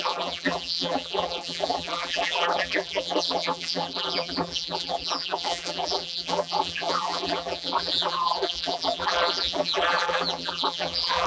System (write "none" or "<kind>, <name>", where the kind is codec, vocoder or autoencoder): vocoder, BigVGAN v2